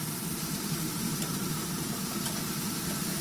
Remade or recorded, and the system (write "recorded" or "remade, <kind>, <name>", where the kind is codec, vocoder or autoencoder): remade, vocoder, BigVGAN v2